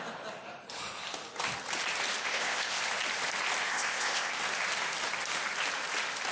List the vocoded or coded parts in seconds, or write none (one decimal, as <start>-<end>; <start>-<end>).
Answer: 2.2-2.8; 3.7-4.4